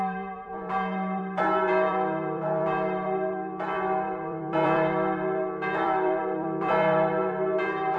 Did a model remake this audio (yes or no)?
yes